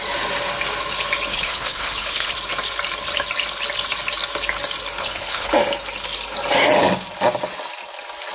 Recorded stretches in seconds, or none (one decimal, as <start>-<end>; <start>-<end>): 0.0-1.3; 2.3-5.0; 5.5-8.3

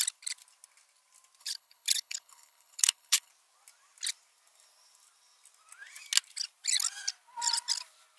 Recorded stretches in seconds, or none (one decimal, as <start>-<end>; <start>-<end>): 0.0-1.4; 3.3-8.2